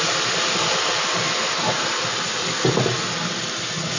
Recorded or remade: recorded